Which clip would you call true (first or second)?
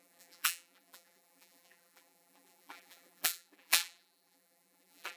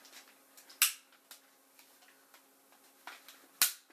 second